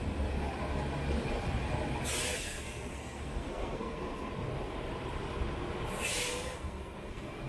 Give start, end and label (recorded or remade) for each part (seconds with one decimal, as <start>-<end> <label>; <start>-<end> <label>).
0.0-2.3 recorded; 2.3-4.3 remade; 4.3-6.3 recorded; 6.3-7.5 remade